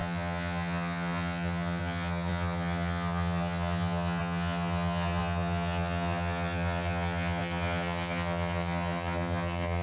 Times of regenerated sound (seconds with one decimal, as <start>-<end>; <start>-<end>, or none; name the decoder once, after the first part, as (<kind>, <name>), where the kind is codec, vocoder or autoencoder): 0.0-9.8 (vocoder, HiFi-GAN)